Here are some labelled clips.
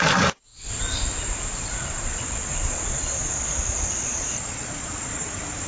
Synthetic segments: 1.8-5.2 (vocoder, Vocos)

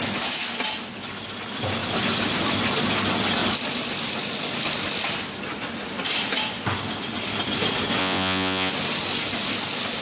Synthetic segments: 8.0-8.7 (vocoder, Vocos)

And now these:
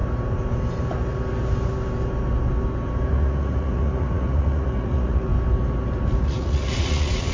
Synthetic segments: 3.1-5.3 (vocoder, Vocos); 6.2-7.3